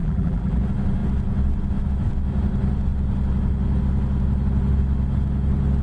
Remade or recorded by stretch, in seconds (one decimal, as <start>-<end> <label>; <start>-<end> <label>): 0.0-0.6 remade; 0.6-5.8 recorded